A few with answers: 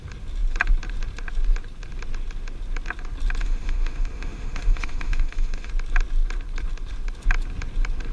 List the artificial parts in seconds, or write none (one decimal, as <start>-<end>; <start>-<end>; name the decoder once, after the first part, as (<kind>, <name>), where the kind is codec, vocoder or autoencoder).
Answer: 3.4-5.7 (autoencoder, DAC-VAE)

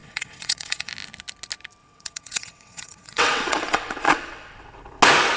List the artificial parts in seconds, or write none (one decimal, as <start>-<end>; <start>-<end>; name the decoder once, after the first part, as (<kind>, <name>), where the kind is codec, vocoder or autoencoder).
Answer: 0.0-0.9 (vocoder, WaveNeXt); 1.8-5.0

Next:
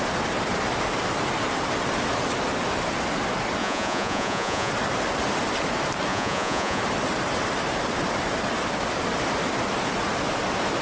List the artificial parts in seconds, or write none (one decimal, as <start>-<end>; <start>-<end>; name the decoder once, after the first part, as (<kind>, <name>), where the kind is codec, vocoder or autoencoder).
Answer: 3.6-4.7 (vocoder, Vocos); 6.1-6.8

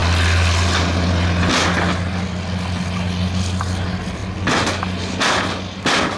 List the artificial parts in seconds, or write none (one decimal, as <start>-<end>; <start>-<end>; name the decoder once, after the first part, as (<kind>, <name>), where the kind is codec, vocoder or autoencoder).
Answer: none

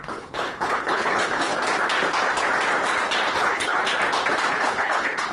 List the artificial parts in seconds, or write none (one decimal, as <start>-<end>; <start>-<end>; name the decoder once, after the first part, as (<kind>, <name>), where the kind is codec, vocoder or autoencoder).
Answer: 0.0-1.5 (codec, HILCodec); 3.3-3.8; 4.5-5.3

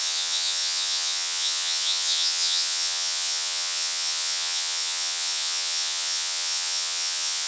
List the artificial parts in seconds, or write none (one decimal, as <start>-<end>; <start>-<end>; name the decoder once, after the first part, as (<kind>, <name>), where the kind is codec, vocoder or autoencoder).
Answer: 0.0-7.5 (vocoder, Vocos)

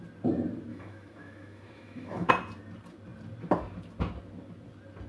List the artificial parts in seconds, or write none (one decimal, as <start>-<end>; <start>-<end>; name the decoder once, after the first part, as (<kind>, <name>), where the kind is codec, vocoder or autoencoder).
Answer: 0.7-2.3 (autoencoder, DAC-VAE)

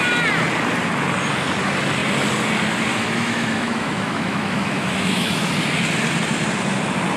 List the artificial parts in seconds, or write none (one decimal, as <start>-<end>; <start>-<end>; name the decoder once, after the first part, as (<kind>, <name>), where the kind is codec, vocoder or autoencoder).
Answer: 2.9-5.5 (autoencoder, DAC-VAE)